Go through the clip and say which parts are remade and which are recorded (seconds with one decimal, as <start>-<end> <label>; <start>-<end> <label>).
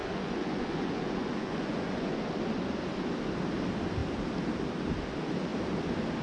0.0-2.2 remade; 2.2-6.2 recorded